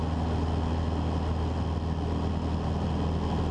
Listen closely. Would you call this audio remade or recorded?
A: recorded